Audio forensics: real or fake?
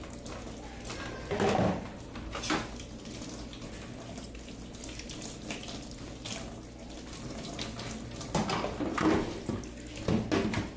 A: real